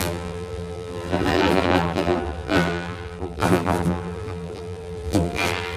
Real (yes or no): no